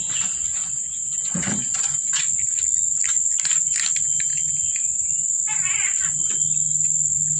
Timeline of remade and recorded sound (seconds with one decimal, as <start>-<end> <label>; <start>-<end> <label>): 0.0-0.6 recorded; 0.6-2.2 remade; 2.2-7.4 recorded